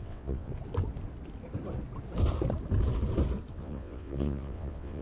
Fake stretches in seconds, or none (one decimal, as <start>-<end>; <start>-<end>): 0.0-0.5; 3.5-5.0